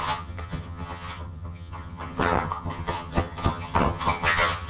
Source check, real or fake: fake